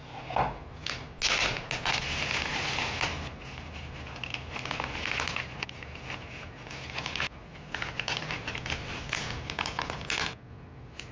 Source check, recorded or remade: recorded